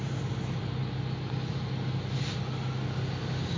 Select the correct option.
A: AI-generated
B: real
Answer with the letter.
B